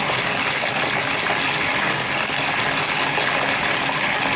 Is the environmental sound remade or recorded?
recorded